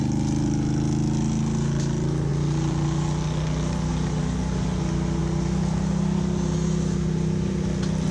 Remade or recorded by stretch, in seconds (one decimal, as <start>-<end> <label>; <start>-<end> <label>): 0.0-8.1 recorded